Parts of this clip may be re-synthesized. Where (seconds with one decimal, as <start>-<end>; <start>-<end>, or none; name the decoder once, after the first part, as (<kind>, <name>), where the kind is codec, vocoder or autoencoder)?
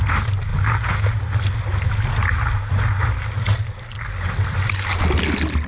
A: none